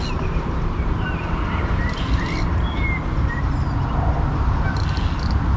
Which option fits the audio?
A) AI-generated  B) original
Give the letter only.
B